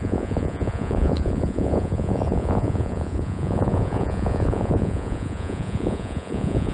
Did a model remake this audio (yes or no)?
yes